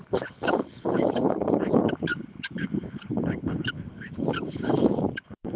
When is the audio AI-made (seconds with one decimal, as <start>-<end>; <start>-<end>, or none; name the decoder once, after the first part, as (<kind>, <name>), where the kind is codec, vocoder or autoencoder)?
0.0-5.6 (codec, HILCodec)